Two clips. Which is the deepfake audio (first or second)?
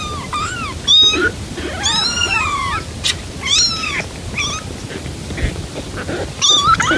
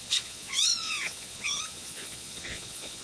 second